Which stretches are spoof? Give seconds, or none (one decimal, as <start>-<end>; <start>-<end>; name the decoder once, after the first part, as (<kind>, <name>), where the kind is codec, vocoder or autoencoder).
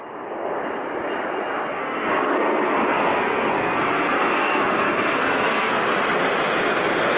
1.7-5.8 (codec, SNAC)